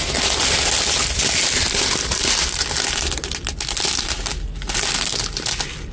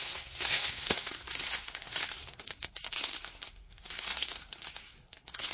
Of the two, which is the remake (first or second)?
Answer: second